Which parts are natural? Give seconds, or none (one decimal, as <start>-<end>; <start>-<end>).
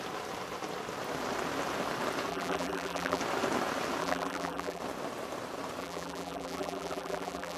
0.0-2.3; 3.2-4.0; 4.8-5.8